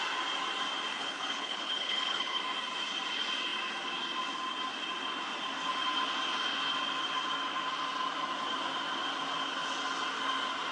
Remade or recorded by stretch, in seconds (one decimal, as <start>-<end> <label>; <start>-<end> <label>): 0.0-0.9 recorded; 0.9-2.4 remade; 2.4-10.7 recorded